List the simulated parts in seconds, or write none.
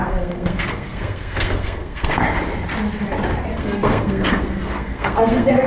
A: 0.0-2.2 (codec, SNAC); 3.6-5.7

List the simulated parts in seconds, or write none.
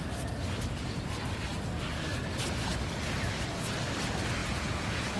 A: 4.4-5.2 (vocoder, Vocos)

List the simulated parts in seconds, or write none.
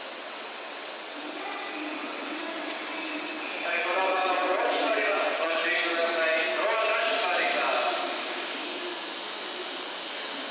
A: 0.0-5.6 (vocoder, WaveNeXt); 10.1-10.5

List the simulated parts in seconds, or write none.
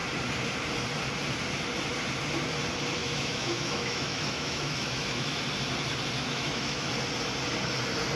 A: 3.0-5.4 (autoencoder, DAC-VAE); 6.2-6.9